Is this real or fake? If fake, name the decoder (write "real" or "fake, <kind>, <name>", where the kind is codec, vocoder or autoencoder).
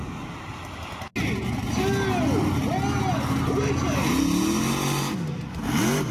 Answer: real